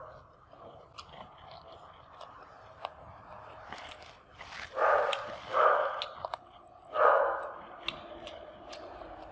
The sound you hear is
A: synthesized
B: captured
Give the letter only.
B